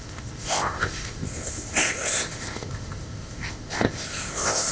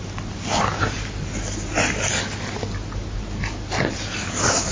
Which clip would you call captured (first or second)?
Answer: second